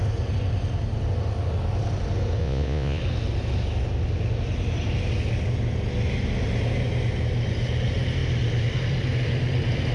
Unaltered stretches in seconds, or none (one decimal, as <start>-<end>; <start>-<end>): 0.0-2.4; 3.0-9.9